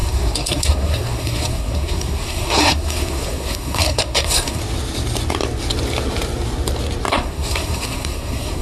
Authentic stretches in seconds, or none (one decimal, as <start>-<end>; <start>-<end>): 4.6-7.1